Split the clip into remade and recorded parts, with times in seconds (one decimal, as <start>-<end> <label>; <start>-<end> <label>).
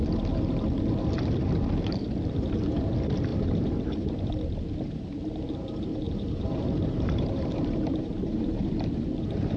0.0-3.3 recorded; 3.3-4.3 remade; 4.3-5.9 recorded; 5.9-9.6 remade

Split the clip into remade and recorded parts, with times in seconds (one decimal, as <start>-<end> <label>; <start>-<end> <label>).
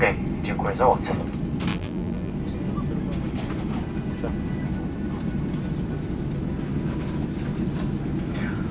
0.0-1.7 recorded; 1.7-2.3 remade; 2.3-8.7 recorded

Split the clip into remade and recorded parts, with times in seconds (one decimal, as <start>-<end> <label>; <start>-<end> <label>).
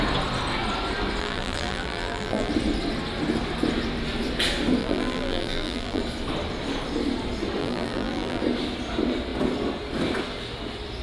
0.0-1.2 recorded; 1.2-2.5 remade; 2.5-4.8 recorded; 4.8-6.0 remade; 6.0-7.6 recorded; 7.6-8.4 remade; 8.4-11.0 recorded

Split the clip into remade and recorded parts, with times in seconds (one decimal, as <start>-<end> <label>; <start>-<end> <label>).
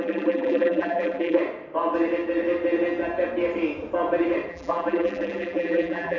0.0-1.4 remade; 1.4-4.5 recorded; 4.5-6.2 remade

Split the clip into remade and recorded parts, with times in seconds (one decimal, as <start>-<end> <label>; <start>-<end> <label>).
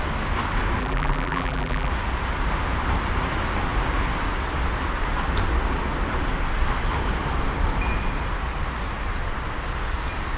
0.0-0.8 recorded; 0.8-1.9 remade; 1.9-10.4 recorded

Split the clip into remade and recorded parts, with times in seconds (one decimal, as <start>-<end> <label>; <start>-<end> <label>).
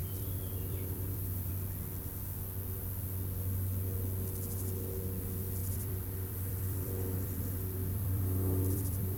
0.0-1.5 remade; 1.5-5.6 recorded; 5.6-9.2 remade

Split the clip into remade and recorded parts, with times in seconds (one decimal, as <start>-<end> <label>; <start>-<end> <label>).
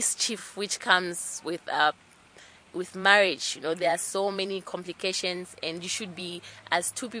0.0-0.4 remade; 0.4-1.4 recorded; 1.4-7.2 remade